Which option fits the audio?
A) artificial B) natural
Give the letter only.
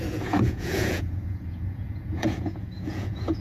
A